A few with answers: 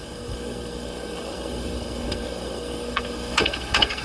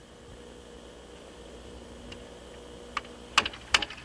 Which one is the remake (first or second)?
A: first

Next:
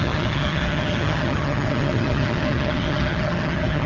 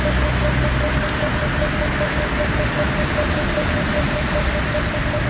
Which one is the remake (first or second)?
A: first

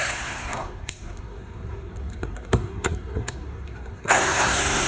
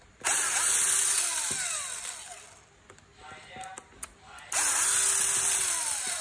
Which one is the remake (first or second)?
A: first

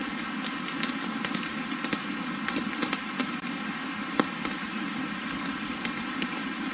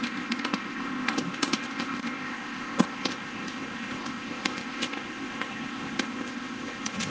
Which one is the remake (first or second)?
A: second